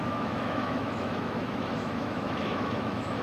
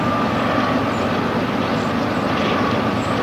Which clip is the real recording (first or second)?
second